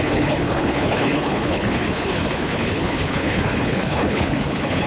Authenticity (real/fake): fake